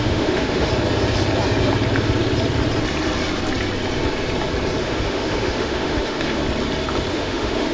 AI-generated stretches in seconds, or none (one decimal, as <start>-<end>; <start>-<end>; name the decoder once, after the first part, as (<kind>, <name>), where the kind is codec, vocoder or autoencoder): 0.0-0.7 (autoencoder, DAC-VAE); 4.8-6.4; 7.1-7.7